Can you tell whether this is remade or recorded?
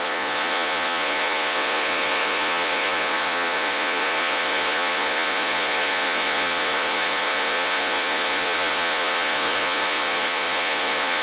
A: remade